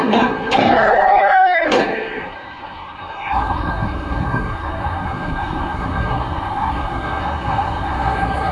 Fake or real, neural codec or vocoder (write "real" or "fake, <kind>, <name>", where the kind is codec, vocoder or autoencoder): fake, codec, SNAC